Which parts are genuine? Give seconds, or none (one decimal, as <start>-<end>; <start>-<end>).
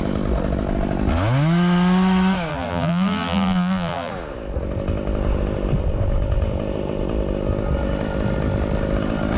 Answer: 0.0-2.5; 4.1-9.4